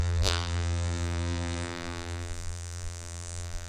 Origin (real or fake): fake